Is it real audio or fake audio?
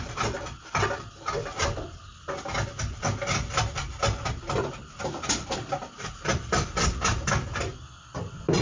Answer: real